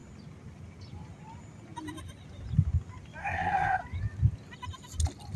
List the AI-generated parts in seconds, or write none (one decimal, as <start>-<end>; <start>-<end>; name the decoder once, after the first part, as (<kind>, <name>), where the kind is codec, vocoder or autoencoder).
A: 3.2-3.8 (codec, SNAC)